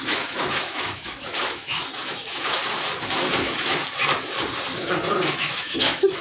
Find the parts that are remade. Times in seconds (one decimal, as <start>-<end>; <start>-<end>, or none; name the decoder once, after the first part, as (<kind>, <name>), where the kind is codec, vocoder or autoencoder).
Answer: 0.0-2.6 (autoencoder, DAC-VAE); 3.4-3.8; 5.3-6.2